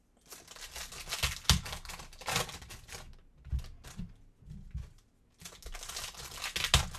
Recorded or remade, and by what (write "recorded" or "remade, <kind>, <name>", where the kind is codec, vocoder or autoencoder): recorded